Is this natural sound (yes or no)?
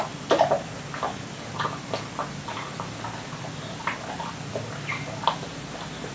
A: yes